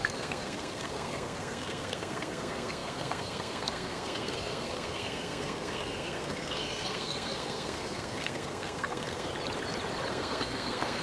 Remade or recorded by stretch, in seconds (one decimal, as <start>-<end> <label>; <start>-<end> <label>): 0.0-9.3 remade; 9.3-10.1 recorded; 10.1-11.0 remade